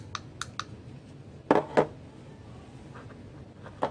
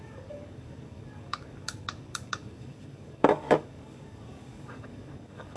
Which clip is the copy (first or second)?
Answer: second